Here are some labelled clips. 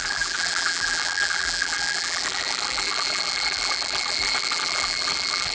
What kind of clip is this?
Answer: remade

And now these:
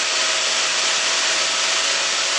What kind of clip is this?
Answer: remade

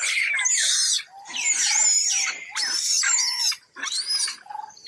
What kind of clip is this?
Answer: recorded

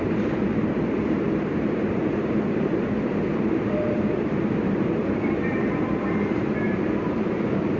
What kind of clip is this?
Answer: remade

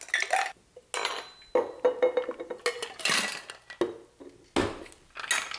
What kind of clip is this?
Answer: recorded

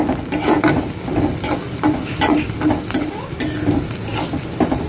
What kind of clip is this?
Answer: recorded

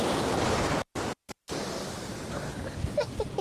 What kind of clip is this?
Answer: remade